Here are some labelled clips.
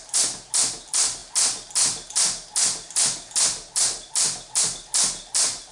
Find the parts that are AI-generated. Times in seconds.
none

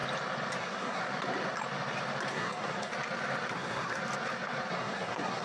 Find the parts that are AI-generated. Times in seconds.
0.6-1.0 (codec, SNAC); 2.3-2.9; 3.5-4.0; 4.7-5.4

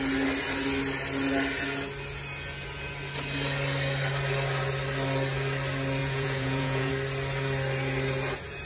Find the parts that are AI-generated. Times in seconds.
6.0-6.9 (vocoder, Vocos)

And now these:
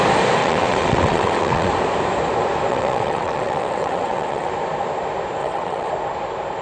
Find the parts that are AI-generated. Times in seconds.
0.4-1.7 (vocoder, WaveNeXt); 2.7-4.5; 5.4-5.9

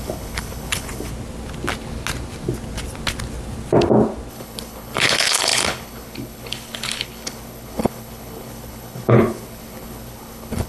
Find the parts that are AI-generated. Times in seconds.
0.0-1.1 (codec, HILCodec); 4.3-10.7